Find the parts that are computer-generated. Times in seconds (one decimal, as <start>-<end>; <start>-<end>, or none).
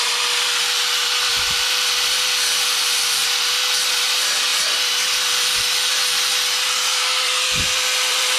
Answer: 0.0-8.4